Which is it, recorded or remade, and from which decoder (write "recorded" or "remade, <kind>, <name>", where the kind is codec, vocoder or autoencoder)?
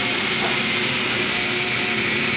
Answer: recorded